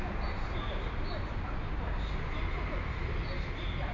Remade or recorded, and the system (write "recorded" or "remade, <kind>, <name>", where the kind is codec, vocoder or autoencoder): recorded